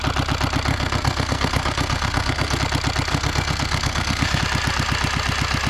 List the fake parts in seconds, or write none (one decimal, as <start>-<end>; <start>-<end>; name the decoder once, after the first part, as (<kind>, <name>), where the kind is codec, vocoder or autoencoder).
0.7-2.6 (codec, SNAC); 3.1-4.4